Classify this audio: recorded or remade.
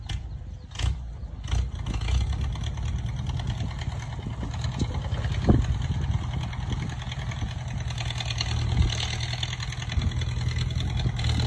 recorded